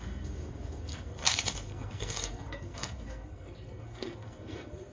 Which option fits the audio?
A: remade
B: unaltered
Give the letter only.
A